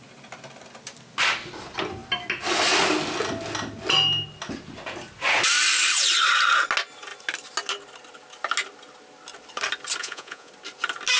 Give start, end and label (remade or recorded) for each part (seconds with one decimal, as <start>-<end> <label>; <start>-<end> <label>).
0.0-10.0 recorded; 10.0-10.5 remade; 10.5-11.2 recorded